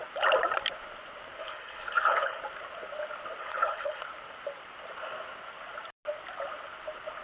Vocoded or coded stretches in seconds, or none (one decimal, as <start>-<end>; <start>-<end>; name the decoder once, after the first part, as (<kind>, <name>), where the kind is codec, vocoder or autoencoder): 1.4-2.4 (codec, HILCodec); 3.4-4.0